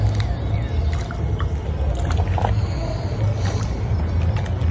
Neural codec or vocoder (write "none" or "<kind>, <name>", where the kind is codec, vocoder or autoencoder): none